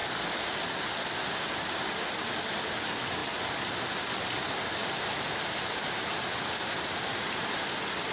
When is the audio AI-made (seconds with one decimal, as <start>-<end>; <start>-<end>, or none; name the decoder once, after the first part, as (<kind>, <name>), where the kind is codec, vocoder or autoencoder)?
3.2-4.1 (vocoder, BigVGAN v2)